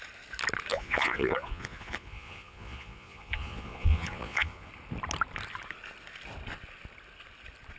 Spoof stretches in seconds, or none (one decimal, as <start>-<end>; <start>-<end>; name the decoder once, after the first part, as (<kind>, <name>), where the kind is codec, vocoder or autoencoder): 0.7-4.7 (vocoder, Vocos)